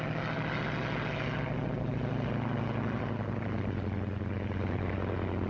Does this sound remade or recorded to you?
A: recorded